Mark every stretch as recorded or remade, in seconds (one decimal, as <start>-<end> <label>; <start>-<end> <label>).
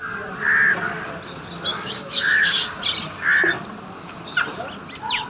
0.0-1.7 recorded; 1.7-2.8 remade; 2.8-5.3 recorded